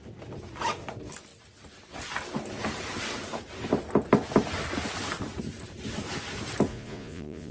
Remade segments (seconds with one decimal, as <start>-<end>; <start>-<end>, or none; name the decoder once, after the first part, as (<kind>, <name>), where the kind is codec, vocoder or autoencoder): 6.7-7.5 (vocoder, Vocos)